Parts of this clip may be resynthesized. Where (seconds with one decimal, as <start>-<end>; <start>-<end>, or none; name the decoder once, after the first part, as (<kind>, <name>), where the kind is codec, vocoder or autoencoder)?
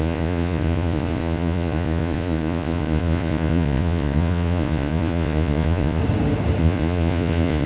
0.0-6.0 (vocoder, Vocos); 6.6-7.7